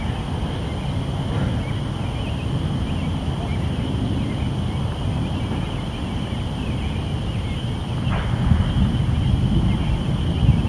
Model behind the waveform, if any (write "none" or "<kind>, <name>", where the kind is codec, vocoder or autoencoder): none